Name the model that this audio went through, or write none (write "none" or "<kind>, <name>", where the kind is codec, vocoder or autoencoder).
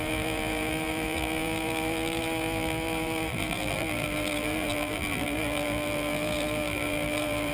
vocoder, BigVGAN v2